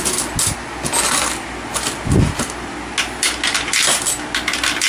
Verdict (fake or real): real